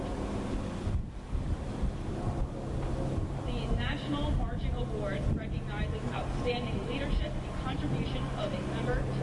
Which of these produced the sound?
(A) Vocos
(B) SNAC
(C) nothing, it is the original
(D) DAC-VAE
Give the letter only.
C